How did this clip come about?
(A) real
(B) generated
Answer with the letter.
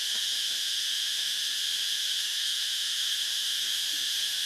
B